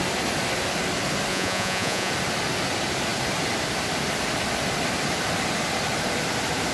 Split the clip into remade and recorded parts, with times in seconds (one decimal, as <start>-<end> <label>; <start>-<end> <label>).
0.0-1.3 recorded; 1.3-2.1 remade; 2.1-6.7 recorded